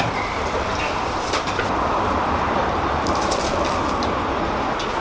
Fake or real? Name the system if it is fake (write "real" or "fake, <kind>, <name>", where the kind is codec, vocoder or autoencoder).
fake, vocoder, BigVGAN v2